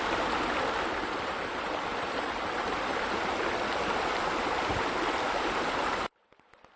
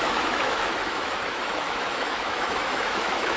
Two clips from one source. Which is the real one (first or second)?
first